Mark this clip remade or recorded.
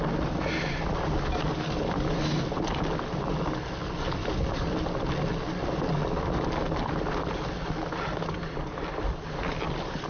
recorded